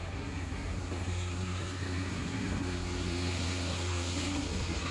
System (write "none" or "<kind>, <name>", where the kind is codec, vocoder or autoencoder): codec, SNAC